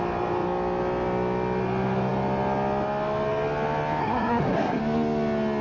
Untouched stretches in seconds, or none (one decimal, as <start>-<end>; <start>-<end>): 0.0-4.0; 4.8-5.6